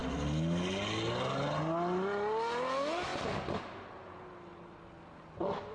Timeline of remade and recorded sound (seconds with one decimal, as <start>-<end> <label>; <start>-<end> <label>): 0.0-5.7 recorded